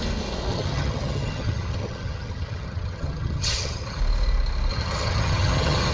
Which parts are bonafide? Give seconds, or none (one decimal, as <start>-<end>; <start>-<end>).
0.0-0.5; 4.0-4.7